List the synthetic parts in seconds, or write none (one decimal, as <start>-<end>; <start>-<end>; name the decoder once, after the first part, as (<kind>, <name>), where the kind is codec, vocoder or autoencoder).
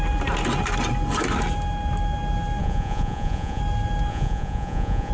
2.6-3.6 (vocoder, Vocos); 4.1-5.1